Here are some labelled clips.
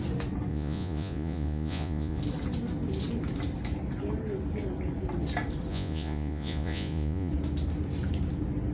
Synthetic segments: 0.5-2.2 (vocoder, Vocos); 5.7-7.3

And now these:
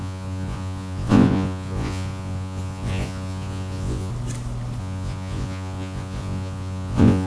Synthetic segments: 0.0-4.1 (vocoder, Vocos); 4.8-7.3